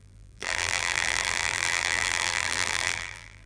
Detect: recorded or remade remade